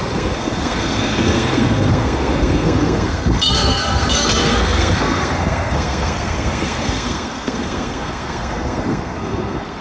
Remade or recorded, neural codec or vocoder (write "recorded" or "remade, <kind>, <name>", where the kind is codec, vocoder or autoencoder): remade, codec, SNAC